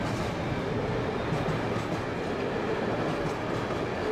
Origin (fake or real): real